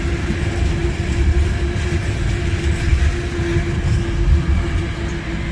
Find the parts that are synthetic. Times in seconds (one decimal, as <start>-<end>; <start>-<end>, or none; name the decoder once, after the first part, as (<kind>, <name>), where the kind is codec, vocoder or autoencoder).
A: none